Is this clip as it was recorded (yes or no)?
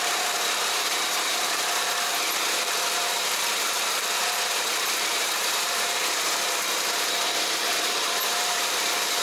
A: no